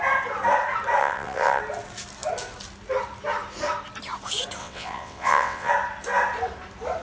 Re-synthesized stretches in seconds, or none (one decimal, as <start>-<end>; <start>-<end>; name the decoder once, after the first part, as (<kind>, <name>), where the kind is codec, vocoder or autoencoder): 1.0-1.6 (vocoder, WaveNeXt); 4.6-5.7